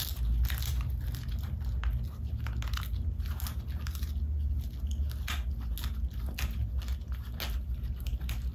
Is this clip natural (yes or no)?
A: yes